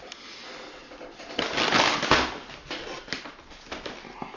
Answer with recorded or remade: recorded